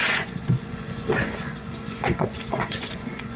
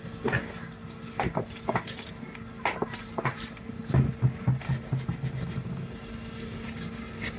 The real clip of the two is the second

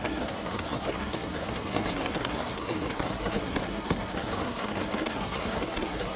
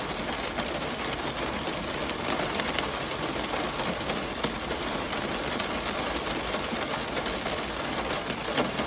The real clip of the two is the second